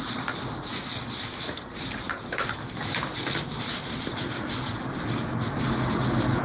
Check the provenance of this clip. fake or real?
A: real